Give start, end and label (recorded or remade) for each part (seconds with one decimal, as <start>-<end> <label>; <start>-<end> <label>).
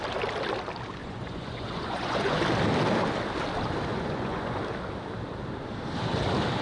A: 0.0-1.0 recorded; 1.0-2.4 remade; 2.4-3.9 recorded; 3.9-4.6 remade; 4.6-6.6 recorded